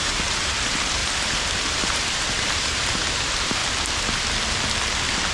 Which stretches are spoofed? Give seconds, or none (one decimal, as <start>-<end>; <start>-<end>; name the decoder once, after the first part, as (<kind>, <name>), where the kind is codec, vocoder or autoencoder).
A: 0.0-1.0 (vocoder, BigVGAN v2); 1.7-3.6